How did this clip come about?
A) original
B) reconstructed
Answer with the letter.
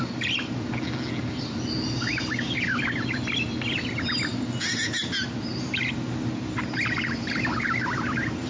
A